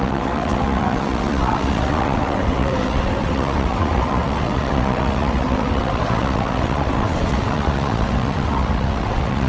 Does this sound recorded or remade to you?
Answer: remade